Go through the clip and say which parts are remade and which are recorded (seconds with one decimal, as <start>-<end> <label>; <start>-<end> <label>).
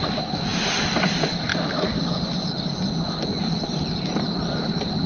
0.0-5.1 recorded